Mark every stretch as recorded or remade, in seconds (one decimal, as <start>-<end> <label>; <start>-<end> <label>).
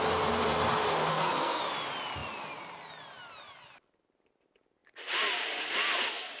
0.0-1.1 recorded; 1.1-1.6 remade; 1.6-6.4 recorded